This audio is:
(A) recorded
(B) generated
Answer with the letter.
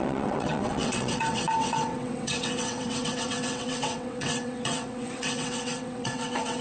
B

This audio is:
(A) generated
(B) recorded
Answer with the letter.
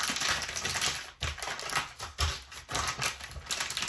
B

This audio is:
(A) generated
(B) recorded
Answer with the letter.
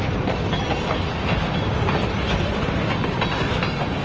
B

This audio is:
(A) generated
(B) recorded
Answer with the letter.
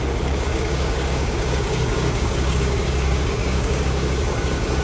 A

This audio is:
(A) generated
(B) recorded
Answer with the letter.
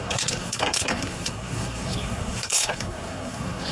A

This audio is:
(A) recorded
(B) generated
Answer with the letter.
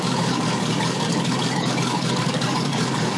B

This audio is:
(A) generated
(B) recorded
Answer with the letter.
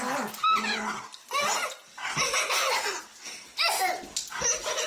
B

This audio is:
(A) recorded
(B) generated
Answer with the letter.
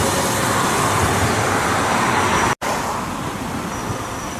A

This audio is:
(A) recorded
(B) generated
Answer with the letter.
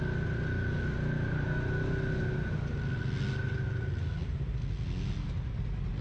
A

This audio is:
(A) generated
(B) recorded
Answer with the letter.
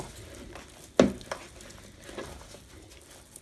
B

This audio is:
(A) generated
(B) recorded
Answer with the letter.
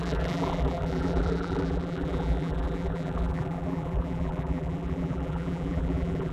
A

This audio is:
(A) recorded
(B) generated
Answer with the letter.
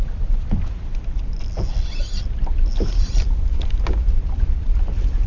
A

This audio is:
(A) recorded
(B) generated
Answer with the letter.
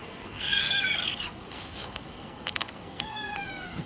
B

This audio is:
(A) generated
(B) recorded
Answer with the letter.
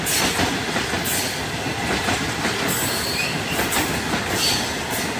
B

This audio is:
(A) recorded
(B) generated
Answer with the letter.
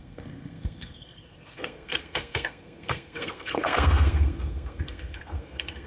B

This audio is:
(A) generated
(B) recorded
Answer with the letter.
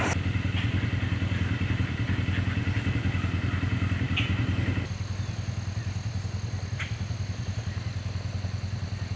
B